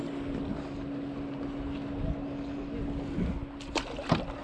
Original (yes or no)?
yes